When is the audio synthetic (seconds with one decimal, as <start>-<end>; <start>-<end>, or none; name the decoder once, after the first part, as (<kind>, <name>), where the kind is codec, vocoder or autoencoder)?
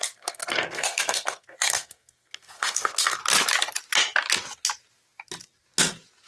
0.0-3.2 (codec, SNAC)